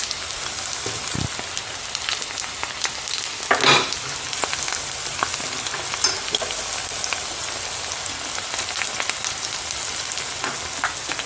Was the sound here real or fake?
real